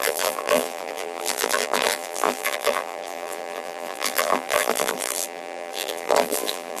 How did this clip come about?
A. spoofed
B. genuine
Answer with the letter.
A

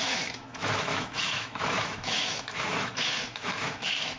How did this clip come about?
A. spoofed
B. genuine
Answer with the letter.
A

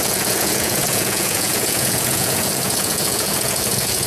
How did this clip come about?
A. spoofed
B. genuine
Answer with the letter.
A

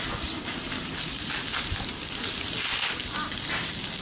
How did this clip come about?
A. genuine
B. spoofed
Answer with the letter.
A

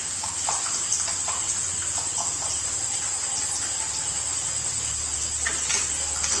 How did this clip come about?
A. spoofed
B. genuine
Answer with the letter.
B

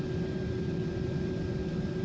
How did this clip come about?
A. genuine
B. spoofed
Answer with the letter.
A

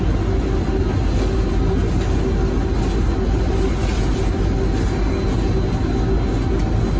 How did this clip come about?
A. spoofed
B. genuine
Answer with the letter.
B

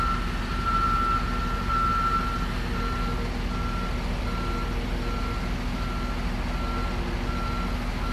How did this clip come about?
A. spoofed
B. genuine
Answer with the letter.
B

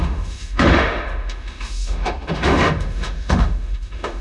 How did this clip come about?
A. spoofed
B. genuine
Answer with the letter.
A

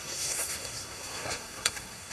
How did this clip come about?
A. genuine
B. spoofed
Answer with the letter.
B